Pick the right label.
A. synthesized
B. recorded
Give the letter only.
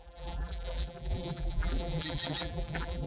A